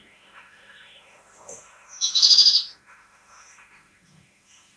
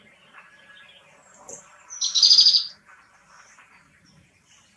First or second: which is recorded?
second